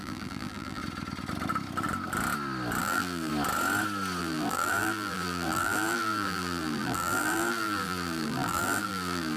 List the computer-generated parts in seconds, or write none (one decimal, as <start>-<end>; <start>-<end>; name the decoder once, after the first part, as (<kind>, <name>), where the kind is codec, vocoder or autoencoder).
0.0-0.8 (vocoder, BigVGAN v2); 2.8-3.3; 4.2-9.4